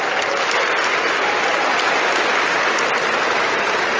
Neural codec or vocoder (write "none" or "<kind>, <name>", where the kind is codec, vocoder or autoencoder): none